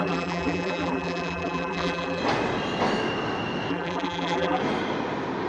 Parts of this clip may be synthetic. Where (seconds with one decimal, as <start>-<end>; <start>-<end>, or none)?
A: 0.0-2.2; 3.7-4.6